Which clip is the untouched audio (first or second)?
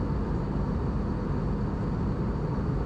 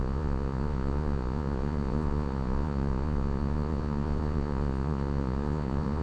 first